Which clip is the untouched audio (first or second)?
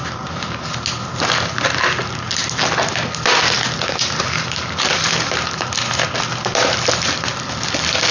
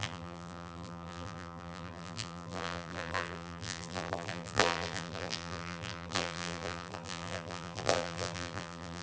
first